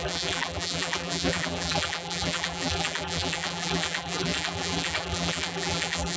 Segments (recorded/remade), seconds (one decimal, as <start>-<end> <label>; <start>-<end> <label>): 0.0-6.2 remade